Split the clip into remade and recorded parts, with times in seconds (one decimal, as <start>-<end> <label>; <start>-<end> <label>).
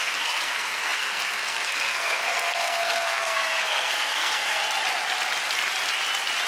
0.0-4.6 remade; 4.6-6.5 recorded